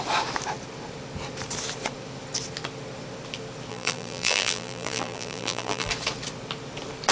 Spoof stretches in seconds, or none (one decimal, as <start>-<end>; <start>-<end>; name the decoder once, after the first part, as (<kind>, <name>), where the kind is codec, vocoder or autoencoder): 3.7-5.9 (vocoder, BigVGAN v2)